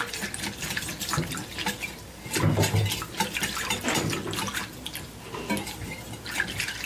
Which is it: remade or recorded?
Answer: recorded